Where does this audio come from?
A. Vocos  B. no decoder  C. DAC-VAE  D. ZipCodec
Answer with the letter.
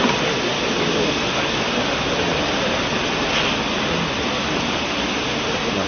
B